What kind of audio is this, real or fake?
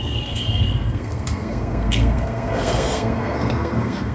fake